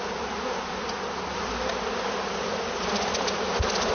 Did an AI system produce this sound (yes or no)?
no